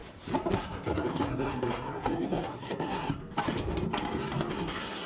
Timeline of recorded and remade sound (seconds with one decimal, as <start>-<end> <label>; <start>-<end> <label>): 0.0-0.5 recorded; 0.5-3.2 remade; 3.2-4.5 recorded; 4.5-5.1 remade